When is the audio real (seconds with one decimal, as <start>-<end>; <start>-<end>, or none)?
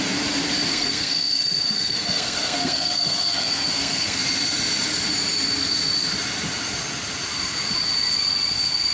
0.0-0.7; 4.2-8.9